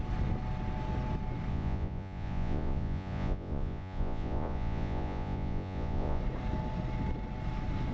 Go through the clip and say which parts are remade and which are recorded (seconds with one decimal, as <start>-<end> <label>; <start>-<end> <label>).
0.0-1.5 recorded; 1.5-6.2 remade; 6.2-7.9 recorded